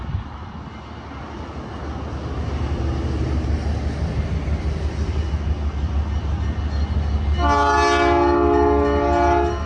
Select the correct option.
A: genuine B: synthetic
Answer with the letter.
A